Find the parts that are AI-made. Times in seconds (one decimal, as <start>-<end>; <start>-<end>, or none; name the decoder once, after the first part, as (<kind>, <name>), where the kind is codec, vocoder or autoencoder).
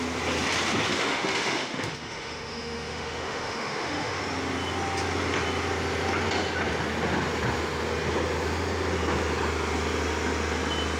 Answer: 0.9-4.2 (autoencoder, DAC-VAE)